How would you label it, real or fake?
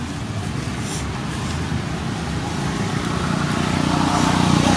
real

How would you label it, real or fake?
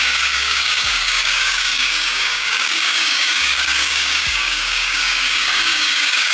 fake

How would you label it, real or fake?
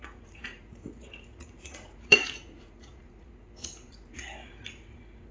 fake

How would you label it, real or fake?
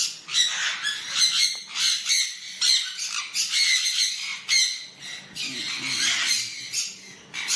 real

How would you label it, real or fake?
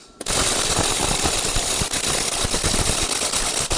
real